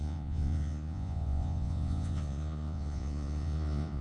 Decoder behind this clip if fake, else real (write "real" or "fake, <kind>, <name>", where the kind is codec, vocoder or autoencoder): fake, vocoder, Vocos